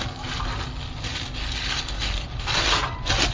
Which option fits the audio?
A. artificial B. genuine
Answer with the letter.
B